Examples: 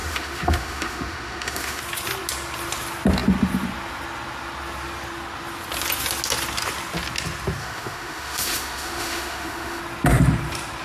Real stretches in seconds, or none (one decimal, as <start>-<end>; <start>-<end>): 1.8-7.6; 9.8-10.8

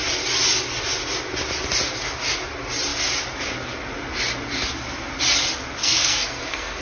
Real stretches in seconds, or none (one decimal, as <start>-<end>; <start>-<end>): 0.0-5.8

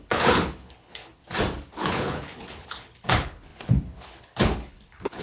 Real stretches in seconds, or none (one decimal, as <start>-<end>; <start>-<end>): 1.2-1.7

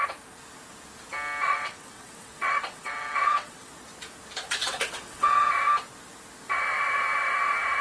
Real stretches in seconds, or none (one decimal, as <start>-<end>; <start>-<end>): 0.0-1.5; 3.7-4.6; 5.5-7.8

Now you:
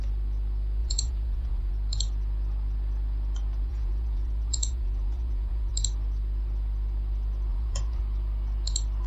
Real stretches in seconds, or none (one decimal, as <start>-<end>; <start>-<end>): 0.0-0.8; 1.7-3.7; 5.7-7.5; 8.0-9.1

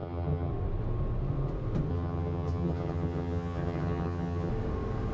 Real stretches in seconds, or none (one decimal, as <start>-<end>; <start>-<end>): 0.5-1.9; 4.5-5.1

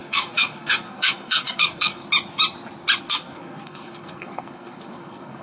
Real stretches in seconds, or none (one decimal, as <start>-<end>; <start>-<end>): 2.0-3.0